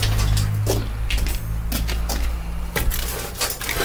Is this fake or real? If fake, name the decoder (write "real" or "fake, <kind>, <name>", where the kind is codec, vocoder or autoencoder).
real